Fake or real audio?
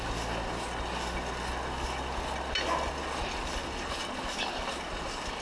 real